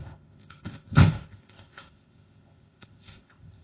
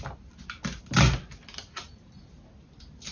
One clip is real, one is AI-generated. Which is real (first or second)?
second